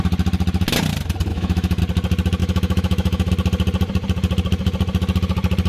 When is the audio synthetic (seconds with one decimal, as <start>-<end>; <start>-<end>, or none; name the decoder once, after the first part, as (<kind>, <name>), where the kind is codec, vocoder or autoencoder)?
1.3-1.8 (autoencoder, DAC-VAE); 2.4-3.3